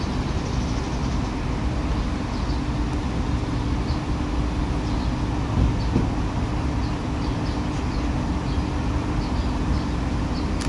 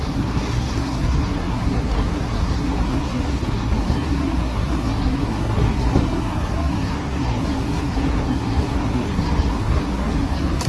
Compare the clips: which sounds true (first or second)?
first